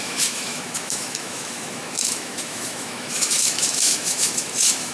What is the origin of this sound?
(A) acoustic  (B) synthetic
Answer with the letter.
B